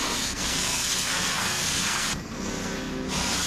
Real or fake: fake